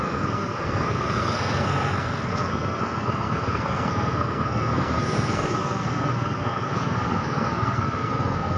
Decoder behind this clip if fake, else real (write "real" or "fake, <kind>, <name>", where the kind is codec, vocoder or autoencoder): fake, codec, SNAC